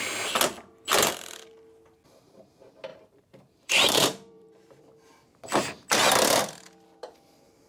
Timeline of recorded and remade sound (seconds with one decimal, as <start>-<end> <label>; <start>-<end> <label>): 0.0-2.9 recorded; 2.9-4.8 remade; 4.8-7.7 recorded